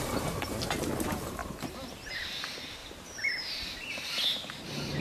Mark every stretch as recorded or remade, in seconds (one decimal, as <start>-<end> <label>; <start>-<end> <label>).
0.0-2.8 recorded; 2.8-3.9 remade; 3.9-5.0 recorded